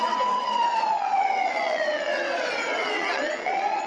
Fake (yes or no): yes